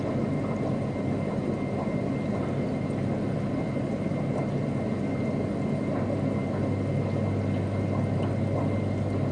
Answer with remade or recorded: recorded